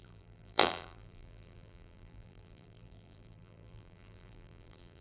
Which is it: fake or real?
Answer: fake